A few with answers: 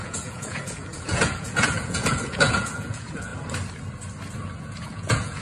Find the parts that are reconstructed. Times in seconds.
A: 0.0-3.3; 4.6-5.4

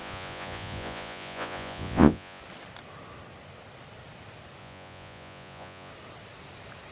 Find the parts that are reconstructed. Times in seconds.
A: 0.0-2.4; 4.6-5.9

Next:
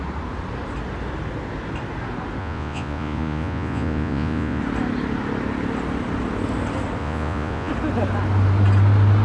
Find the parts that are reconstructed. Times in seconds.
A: 2.4-4.6; 7.0-7.7